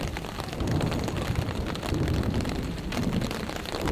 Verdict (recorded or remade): recorded